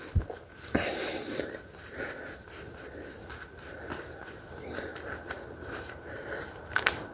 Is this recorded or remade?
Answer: recorded